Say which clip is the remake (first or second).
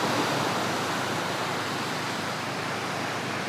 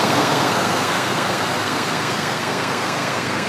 second